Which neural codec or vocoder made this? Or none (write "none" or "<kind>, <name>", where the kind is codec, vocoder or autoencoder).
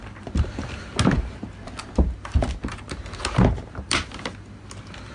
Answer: none